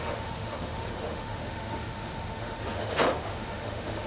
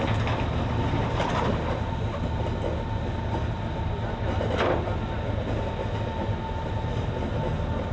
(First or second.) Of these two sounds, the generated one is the first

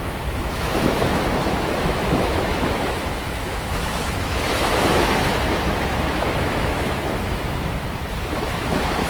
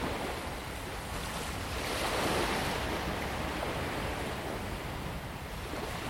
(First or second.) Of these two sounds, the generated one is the first